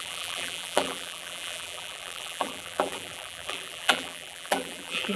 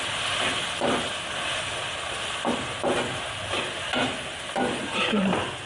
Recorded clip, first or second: second